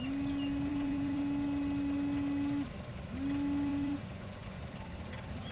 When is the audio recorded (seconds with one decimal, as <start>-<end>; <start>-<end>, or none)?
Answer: 0.0-0.7; 1.2-3.7; 4.6-5.5